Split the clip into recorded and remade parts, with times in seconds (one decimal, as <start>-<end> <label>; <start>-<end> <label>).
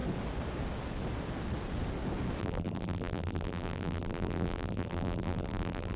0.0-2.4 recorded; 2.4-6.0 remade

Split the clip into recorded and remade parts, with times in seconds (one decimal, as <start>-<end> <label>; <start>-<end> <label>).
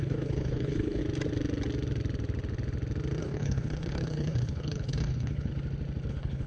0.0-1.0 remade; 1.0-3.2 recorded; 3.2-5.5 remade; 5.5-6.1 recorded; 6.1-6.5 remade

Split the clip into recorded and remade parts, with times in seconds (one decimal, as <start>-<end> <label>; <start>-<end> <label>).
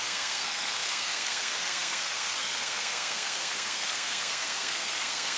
0.0-5.4 remade